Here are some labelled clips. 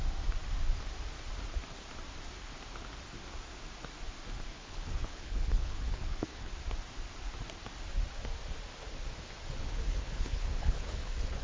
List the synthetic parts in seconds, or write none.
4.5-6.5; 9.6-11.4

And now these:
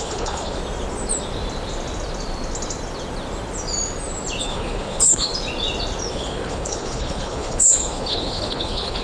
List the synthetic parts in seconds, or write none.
0.0-0.6; 4.4-5.3; 6.1-9.0

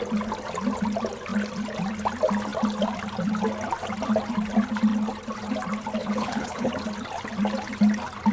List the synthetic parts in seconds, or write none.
6.0-6.7

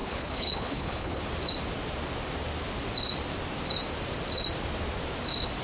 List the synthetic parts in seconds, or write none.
0.0-1.2

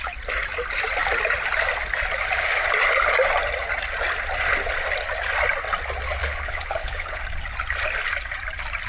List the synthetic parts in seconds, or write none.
6.2-7.2

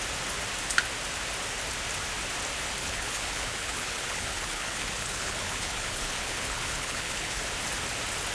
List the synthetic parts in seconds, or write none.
2.8-7.4

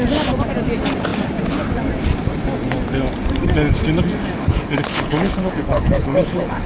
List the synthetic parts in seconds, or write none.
4.5-6.7

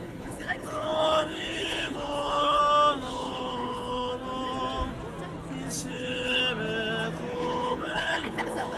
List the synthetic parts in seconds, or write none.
0.0-2.6; 3.1-4.1; 5.9-6.4; 7.3-8.8